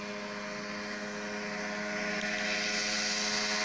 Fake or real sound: real